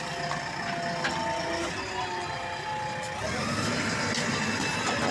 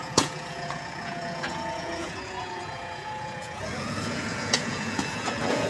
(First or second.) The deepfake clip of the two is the second